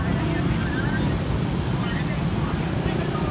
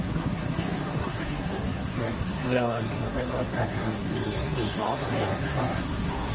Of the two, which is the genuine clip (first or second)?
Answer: first